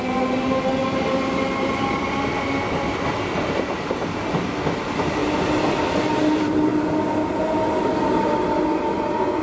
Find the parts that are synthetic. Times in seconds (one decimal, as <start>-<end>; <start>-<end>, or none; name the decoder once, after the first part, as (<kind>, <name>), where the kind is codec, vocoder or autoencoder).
0.8-3.7 (vocoder, BigVGAN v2)